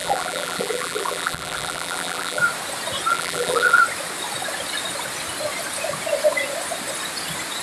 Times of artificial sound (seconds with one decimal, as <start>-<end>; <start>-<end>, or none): 0.0-2.4; 3.1-3.8